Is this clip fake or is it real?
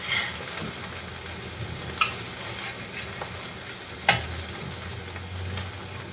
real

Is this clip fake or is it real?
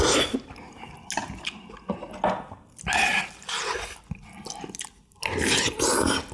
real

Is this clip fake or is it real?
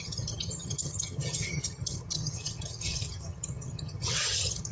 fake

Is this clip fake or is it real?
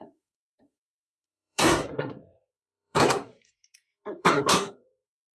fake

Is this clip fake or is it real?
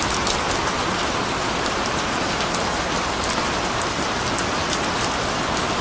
real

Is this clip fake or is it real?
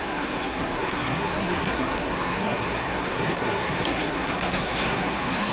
fake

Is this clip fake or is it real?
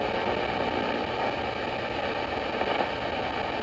real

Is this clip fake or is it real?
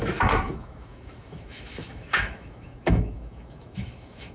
fake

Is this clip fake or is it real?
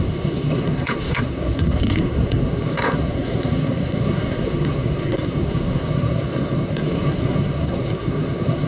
fake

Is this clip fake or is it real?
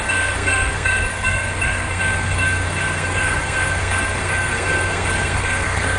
fake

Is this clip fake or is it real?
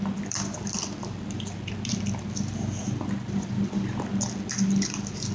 fake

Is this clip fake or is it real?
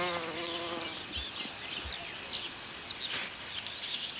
real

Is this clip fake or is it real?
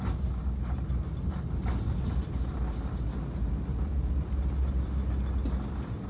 real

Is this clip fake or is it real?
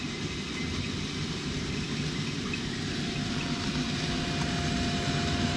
real